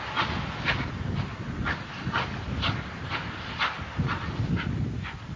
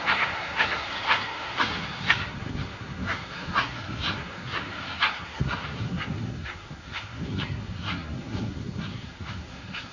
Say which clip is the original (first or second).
first